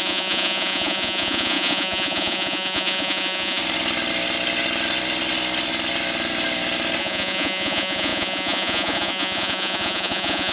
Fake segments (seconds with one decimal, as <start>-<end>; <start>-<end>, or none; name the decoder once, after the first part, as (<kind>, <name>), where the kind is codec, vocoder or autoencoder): 0.0-3.6 (vocoder, Vocos); 7.0-10.5